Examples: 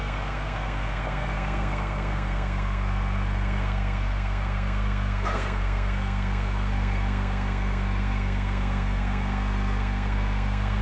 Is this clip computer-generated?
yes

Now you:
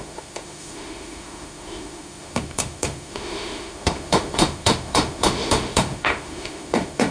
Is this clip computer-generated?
yes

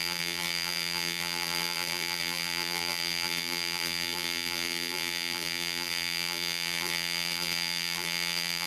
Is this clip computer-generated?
yes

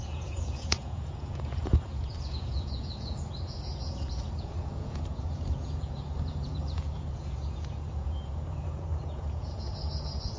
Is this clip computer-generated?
yes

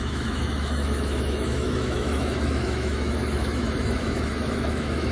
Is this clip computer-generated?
yes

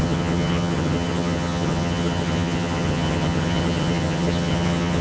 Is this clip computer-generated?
yes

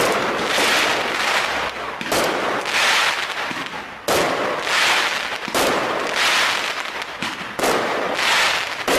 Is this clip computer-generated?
no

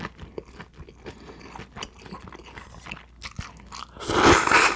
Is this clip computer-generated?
no